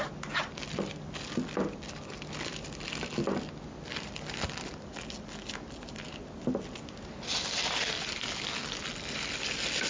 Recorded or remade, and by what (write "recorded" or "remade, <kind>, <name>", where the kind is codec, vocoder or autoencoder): recorded